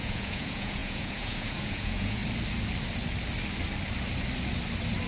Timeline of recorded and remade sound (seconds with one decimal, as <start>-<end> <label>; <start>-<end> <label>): 0.0-2.2 remade; 2.2-5.1 recorded